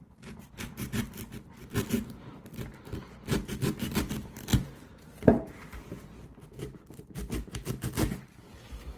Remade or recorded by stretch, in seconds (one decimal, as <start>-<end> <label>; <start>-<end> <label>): 0.0-4.5 recorded; 4.5-5.8 remade; 5.8-9.0 recorded